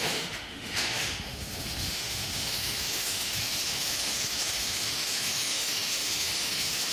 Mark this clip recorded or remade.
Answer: remade